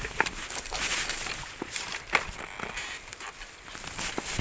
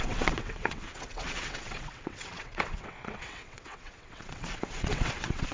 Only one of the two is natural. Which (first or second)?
first